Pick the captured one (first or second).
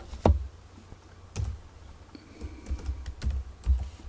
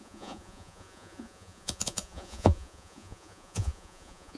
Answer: first